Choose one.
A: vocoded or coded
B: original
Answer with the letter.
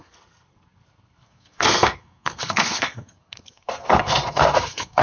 A